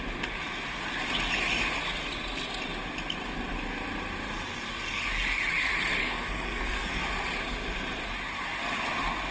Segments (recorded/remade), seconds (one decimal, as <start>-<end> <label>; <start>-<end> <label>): 0.0-6.0 recorded; 6.0-7.0 remade; 7.0-9.3 recorded